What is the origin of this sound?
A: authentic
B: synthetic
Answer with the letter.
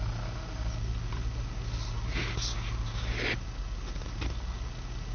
A